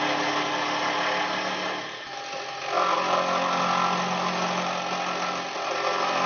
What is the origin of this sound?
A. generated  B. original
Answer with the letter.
B